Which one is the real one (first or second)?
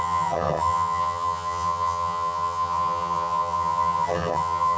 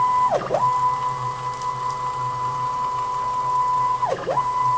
second